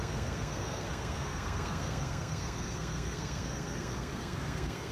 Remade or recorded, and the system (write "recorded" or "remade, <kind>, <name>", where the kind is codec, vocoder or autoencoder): remade, codec, SNAC